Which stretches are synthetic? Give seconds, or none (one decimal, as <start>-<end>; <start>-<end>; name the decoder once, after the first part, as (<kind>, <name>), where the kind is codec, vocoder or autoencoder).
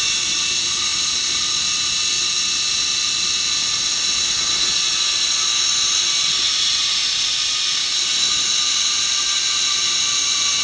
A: none